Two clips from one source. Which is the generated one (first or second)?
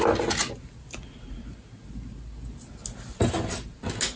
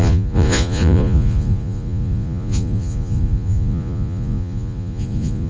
second